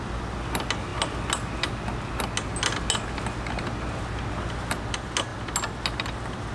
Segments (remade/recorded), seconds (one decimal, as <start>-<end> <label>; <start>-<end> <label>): 0.0-6.5 recorded